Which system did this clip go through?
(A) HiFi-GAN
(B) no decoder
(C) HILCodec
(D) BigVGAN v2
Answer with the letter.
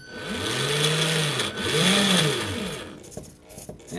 B